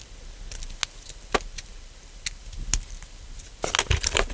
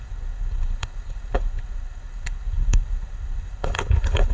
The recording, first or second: first